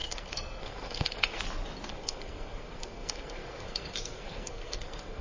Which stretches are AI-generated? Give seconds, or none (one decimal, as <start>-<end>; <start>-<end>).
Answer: 0.0-1.4; 1.9-5.2